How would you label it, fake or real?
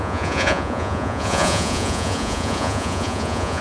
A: fake